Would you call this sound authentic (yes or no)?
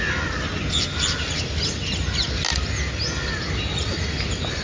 yes